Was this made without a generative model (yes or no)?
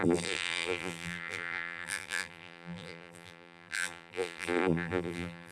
no